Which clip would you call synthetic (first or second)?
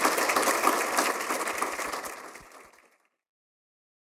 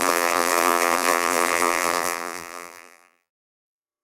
second